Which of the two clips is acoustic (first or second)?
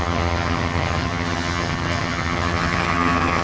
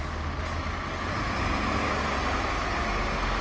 second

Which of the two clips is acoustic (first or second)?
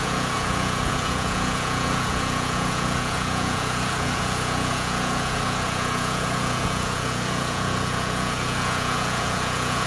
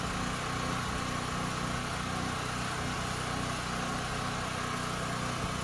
second